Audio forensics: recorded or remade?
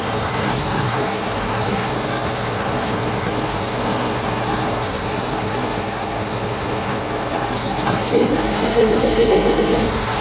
remade